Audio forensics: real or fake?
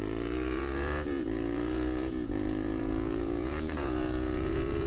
fake